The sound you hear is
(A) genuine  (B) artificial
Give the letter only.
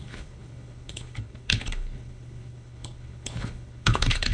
B